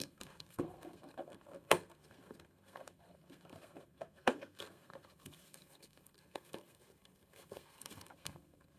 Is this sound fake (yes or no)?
yes